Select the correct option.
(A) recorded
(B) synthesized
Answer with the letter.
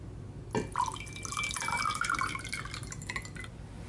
A